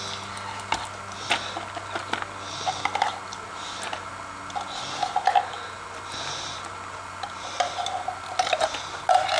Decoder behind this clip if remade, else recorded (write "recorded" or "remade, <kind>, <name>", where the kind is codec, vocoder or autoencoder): recorded